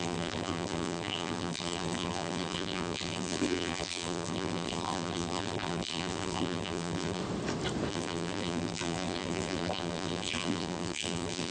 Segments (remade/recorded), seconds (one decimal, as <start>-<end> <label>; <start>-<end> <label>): 0.0-7.2 remade; 7.2-7.9 recorded; 7.9-11.5 remade